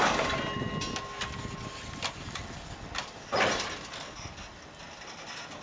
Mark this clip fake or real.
real